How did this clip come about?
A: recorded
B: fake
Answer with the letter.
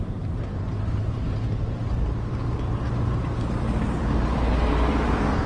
B